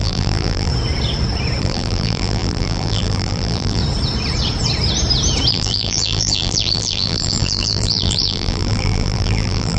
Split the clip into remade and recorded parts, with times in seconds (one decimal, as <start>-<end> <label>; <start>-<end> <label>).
0.0-0.7 remade; 0.7-1.6 recorded; 1.6-3.8 remade; 3.8-5.5 recorded; 5.5-9.8 remade